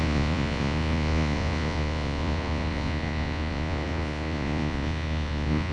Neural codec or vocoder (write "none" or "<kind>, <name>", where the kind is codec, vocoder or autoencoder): vocoder, Vocos